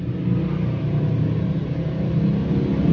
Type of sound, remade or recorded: recorded